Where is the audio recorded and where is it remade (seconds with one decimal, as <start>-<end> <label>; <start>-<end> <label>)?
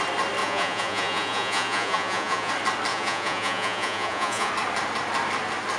0.0-0.4 recorded; 0.4-2.5 remade; 2.5-2.9 recorded; 2.9-4.5 remade; 4.5-5.8 recorded